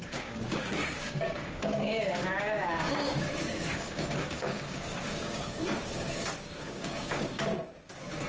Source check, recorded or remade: remade